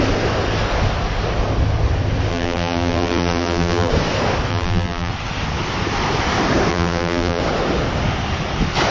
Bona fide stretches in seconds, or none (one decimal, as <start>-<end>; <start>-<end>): 0.0-2.3; 3.9-4.5; 5.1-6.7; 7.4-8.9